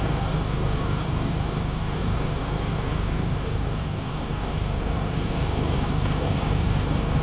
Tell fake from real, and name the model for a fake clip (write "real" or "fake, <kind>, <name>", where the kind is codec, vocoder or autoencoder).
fake, codec, DAC